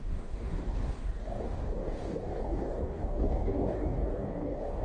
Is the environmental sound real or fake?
fake